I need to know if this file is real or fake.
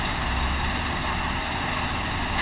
real